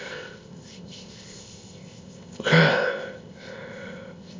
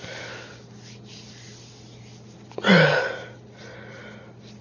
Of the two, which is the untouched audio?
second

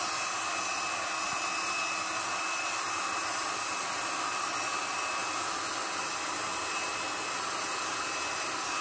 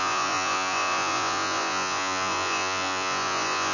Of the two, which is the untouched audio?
first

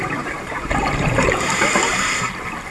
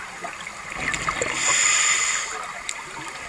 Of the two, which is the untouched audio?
second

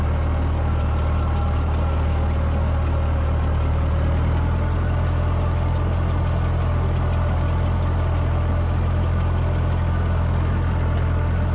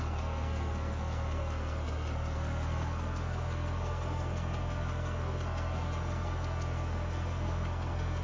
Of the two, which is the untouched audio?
first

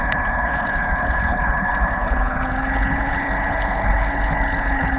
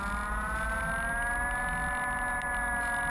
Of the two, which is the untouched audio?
second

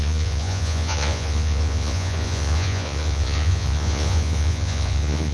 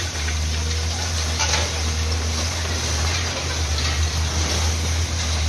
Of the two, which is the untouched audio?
second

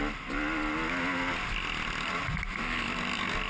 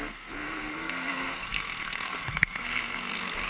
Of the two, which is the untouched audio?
first